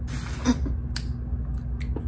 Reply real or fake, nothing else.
real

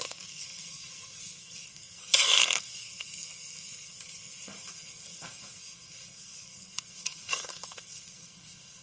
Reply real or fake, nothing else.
fake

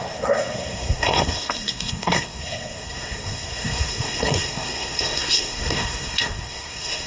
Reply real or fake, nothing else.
fake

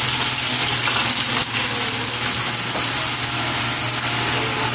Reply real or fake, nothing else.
real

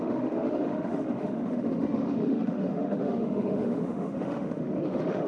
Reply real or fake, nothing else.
fake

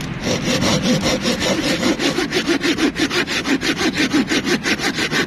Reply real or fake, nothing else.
real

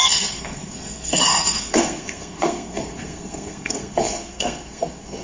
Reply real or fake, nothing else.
fake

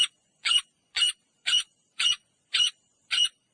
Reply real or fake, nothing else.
fake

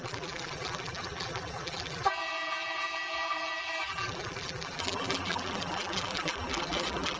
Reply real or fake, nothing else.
fake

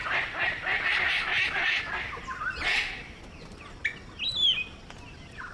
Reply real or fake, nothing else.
real